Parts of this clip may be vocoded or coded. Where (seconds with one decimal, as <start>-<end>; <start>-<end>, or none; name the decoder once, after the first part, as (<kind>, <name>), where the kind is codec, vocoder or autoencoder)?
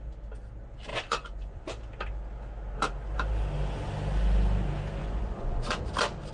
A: 0.9-1.6 (vocoder, Vocos); 5.0-5.8